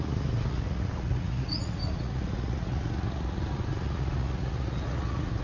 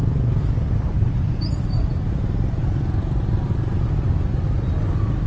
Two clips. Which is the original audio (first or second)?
second